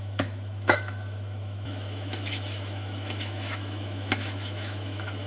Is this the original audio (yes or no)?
no